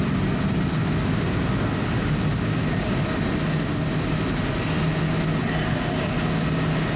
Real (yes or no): yes